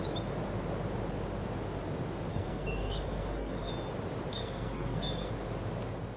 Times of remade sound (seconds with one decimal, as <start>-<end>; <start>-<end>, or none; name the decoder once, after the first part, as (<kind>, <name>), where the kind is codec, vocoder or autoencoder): 2.3-3.7 (codec, SNAC); 4.3-5.3